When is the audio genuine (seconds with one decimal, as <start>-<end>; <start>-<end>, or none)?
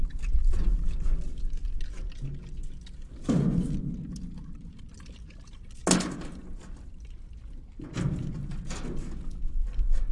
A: 0.0-10.1